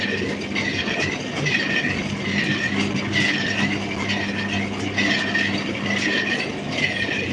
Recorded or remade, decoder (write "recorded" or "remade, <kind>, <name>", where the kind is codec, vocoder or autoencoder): recorded